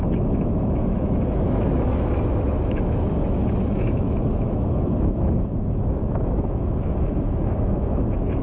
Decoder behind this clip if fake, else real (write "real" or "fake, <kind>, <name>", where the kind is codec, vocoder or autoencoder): fake, autoencoder, DAC-VAE